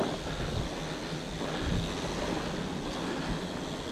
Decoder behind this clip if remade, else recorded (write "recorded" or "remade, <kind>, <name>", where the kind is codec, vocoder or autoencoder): recorded